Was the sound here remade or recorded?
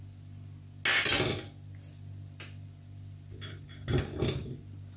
recorded